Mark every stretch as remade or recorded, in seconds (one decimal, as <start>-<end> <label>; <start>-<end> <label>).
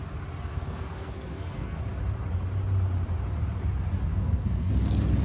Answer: 0.0-0.5 recorded; 0.5-1.8 remade; 1.8-4.1 recorded; 4.1-4.7 remade; 4.7-5.2 recorded